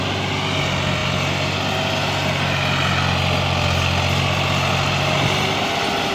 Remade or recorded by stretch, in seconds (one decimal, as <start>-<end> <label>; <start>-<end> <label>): 0.0-6.1 recorded